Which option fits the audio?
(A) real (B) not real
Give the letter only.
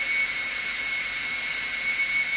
A